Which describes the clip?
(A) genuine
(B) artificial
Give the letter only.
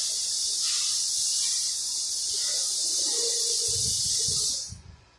B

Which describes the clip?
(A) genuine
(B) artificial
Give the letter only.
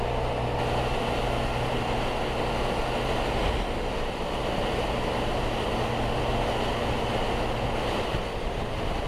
A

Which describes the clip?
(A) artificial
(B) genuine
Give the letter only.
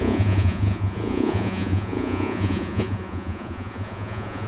A